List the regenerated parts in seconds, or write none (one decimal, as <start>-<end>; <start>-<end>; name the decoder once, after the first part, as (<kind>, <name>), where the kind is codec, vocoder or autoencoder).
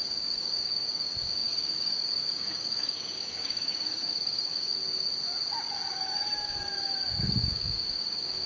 0.0-4.8 (codec, DAC); 5.9-8.5